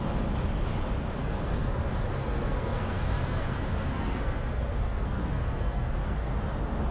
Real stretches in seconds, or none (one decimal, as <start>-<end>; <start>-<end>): 0.0-1.2; 1.7-2.2; 6.3-6.9